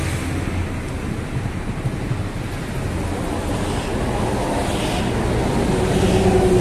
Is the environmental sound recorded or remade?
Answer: recorded